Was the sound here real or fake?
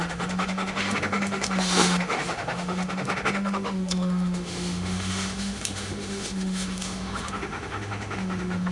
fake